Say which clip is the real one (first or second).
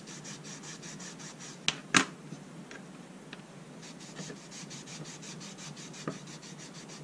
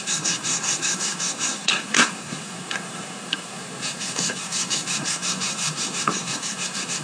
first